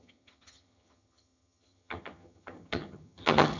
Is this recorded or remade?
remade